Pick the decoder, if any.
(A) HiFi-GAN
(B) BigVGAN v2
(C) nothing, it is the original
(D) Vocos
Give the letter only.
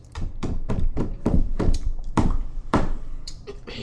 B